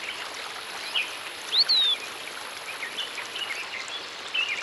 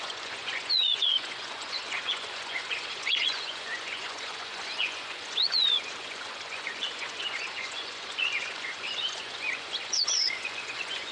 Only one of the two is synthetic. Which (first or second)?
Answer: second